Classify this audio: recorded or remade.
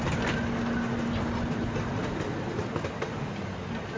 recorded